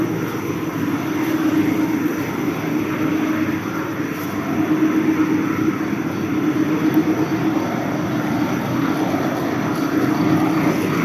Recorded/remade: recorded